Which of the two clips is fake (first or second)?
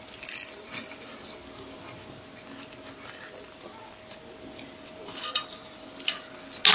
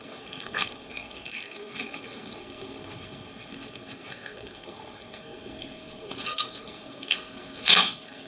second